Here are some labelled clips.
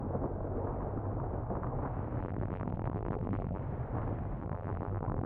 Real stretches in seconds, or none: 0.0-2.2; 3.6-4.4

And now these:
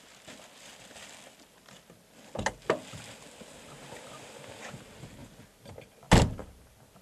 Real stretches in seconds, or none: 0.0-7.0